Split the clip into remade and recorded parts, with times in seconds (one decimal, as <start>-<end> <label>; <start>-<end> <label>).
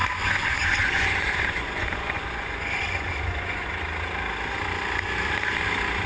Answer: 0.0-3.7 remade; 3.7-6.1 recorded